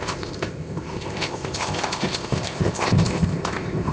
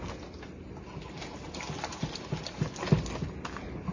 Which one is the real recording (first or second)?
second